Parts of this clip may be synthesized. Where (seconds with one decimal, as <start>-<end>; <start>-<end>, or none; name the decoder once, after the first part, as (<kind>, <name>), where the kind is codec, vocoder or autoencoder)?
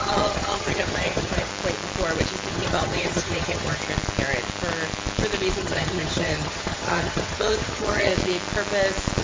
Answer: 0.0-1.5 (vocoder, HiFi-GAN); 2.5-3.8; 5.6-8.1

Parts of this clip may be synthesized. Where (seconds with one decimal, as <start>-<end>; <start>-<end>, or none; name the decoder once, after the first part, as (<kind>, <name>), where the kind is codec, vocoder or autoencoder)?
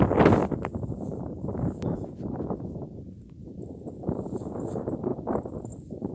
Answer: 0.4-2.5 (vocoder, BigVGAN v2); 3.4-4.4